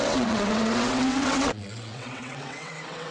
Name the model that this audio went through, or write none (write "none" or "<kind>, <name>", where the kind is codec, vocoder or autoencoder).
vocoder, WaveNeXt